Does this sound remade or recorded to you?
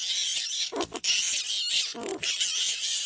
recorded